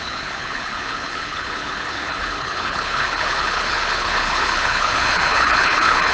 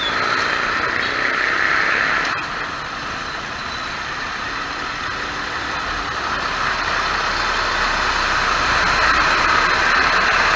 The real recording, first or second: second